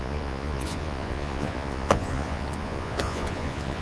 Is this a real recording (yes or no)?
no